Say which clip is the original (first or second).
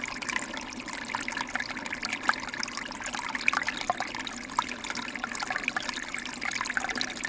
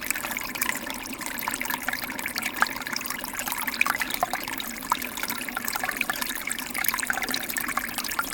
first